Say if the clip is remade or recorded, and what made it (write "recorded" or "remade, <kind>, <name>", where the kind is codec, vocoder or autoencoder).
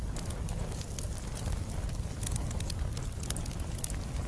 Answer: recorded